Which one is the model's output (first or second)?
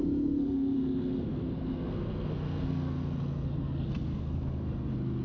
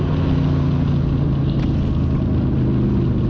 first